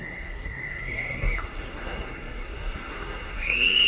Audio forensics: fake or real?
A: fake